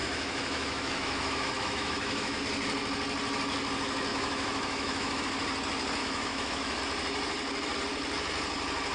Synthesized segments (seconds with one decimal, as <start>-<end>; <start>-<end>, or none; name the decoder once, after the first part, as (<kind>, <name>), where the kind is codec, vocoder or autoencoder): 0.0-2.4 (autoencoder, DAC-VAE); 4.1-5.2; 6.0-6.8